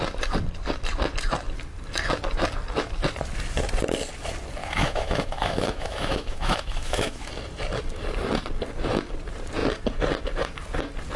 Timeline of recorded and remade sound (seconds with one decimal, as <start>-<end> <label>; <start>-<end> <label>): 0.0-4.6 recorded; 4.6-7.3 remade; 7.3-11.2 recorded